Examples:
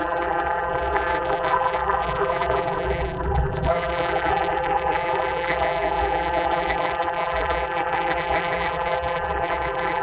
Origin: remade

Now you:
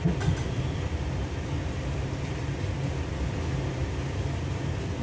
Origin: recorded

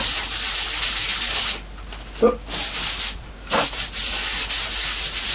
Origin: recorded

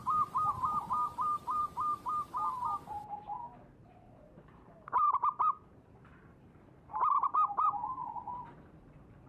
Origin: remade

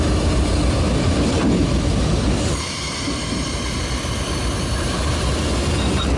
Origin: recorded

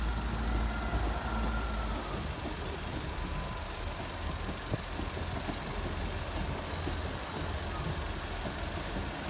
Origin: recorded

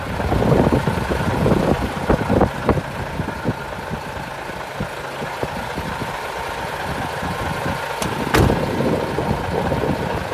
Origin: recorded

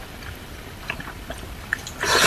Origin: recorded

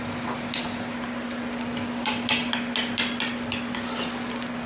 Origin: recorded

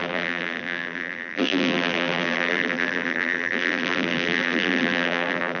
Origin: remade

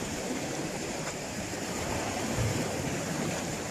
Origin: remade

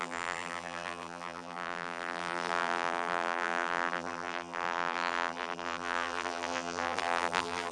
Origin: remade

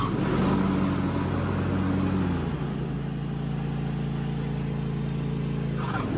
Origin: recorded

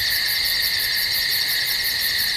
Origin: remade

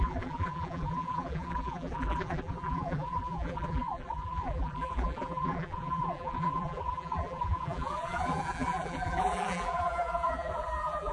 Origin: remade